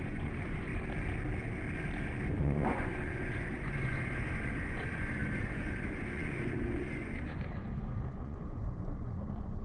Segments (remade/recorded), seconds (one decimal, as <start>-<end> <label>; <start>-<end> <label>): 0.0-0.7 remade; 0.7-2.0 recorded; 2.0-9.6 remade